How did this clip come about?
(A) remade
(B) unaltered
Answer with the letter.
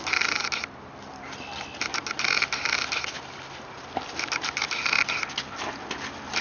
B